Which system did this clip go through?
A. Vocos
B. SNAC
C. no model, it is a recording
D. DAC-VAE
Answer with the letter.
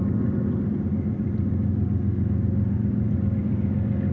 C